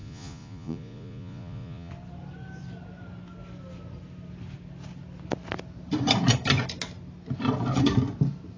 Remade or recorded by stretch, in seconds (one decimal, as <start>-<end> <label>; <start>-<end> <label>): 0.0-1.9 remade; 1.9-8.6 recorded